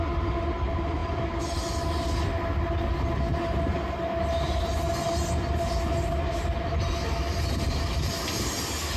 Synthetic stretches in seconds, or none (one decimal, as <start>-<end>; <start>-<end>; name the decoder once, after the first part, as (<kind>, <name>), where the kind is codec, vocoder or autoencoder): none